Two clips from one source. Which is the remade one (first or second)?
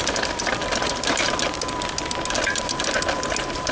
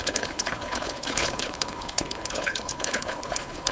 second